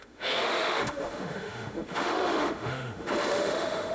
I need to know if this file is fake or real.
fake